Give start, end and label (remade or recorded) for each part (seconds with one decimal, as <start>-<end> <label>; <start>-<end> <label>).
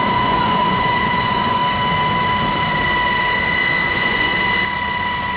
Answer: 0.0-1.6 remade; 1.6-3.9 recorded; 3.9-4.3 remade; 4.3-5.4 recorded